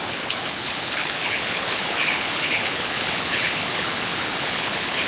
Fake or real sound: fake